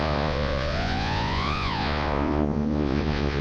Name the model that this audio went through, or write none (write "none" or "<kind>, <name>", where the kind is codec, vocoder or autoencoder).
vocoder, Vocos